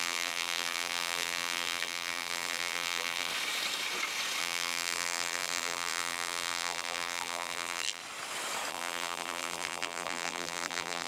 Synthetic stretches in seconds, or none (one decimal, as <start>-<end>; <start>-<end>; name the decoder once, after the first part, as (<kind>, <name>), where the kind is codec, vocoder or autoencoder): 0.0-3.3 (vocoder, BigVGAN v2); 4.4-8.0; 8.7-11.1